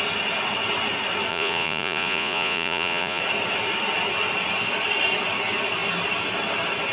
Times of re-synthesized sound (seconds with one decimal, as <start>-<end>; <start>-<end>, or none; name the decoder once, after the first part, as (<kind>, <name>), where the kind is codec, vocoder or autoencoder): 1.3-3.2 (vocoder, Vocos)